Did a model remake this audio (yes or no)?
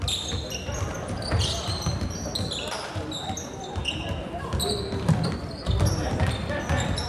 no